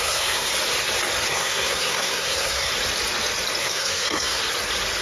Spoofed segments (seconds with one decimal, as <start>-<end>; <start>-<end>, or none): 0.0-0.5; 1.3-2.7; 3.6-4.4